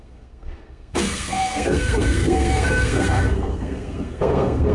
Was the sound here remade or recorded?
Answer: remade